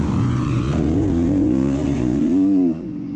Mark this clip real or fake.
fake